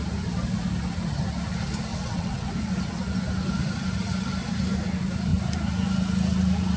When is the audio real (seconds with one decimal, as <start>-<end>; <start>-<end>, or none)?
0.0-1.9; 2.5-6.8